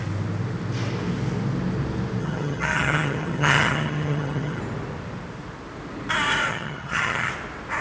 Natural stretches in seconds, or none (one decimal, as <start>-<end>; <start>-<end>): 0.0-2.2; 4.6-6.5; 7.3-7.8